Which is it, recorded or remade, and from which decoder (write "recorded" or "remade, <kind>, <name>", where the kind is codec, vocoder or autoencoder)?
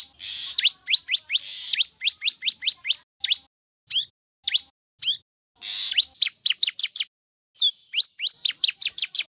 recorded